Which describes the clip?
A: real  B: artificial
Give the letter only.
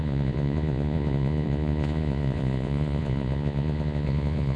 B